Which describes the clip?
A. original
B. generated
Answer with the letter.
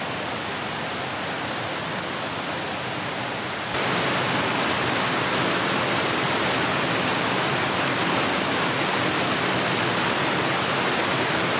A